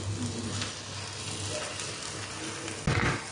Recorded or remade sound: recorded